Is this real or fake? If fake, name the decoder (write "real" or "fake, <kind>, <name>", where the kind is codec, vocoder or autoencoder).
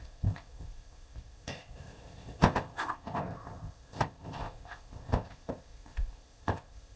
fake, codec, ZipCodec